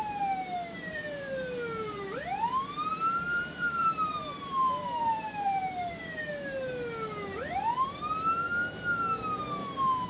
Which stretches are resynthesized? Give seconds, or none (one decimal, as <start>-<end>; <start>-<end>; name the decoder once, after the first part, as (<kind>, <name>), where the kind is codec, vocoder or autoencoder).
0.9-2.0 (vocoder, BigVGAN v2); 2.9-6.3